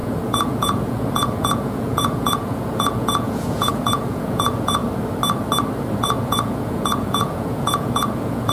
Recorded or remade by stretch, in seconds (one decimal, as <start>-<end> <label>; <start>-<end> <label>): 0.0-4.8 remade; 4.8-6.0 recorded; 6.0-8.5 remade